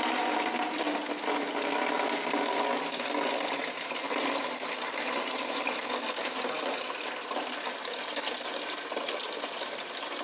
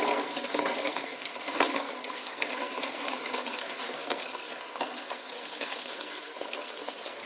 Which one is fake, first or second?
second